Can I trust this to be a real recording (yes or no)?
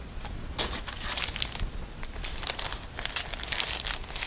yes